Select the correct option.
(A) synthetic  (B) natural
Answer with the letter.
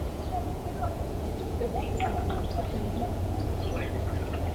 A